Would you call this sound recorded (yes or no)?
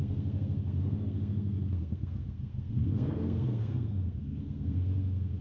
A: no